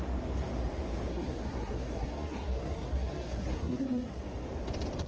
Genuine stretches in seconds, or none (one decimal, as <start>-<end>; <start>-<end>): 0.0-1.1; 4.2-5.1

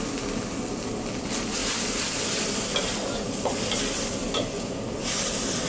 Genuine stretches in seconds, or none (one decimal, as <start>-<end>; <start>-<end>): 0.0-1.6; 2.3-5.7

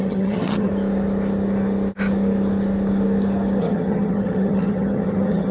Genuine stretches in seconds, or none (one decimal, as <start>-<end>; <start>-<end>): 0.7-3.6

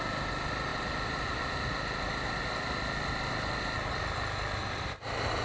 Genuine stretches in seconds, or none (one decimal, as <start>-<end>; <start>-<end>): 0.0-5.4

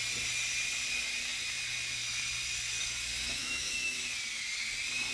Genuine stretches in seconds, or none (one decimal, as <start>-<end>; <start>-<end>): 0.0-3.4; 4.0-5.1

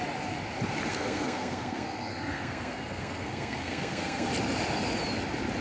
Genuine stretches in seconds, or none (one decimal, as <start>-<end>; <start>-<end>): 0.0-0.9; 4.3-5.6

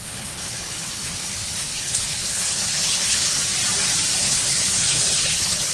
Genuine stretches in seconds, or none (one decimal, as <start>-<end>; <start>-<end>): 3.4-4.2

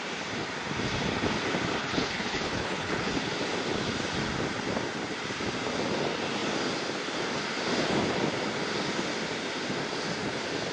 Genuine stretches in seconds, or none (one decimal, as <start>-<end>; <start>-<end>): 0.0-1.8; 3.1-10.7